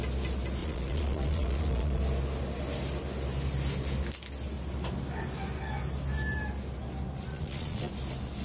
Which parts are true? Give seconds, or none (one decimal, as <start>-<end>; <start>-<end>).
0.0-0.6; 2.0-7.3; 7.9-8.4